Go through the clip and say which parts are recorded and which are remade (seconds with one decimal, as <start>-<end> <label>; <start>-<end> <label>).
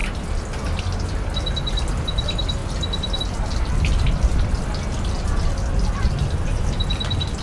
0.0-7.4 recorded